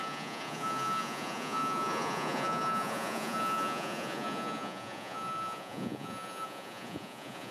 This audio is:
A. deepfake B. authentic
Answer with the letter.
A